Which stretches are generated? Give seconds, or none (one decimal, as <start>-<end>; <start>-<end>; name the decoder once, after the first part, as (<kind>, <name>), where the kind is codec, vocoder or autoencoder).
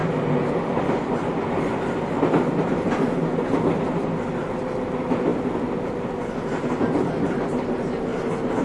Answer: 8.1-8.6 (vocoder, BigVGAN v2)